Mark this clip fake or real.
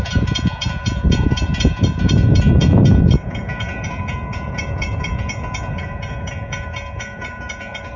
fake